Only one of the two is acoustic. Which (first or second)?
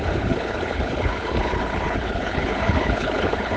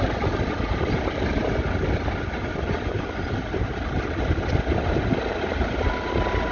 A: second